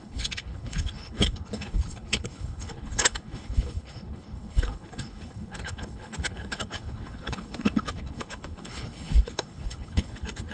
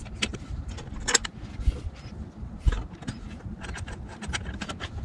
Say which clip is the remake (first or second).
first